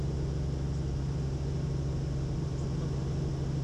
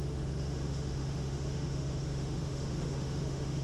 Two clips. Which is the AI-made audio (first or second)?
second